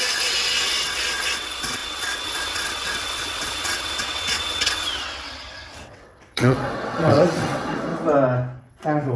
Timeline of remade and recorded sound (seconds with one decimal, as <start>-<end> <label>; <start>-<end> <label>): 0.0-7.9 remade; 7.9-8.6 recorded; 8.6-9.2 remade